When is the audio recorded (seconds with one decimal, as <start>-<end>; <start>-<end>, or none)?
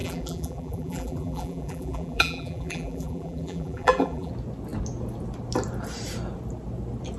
4.3-7.2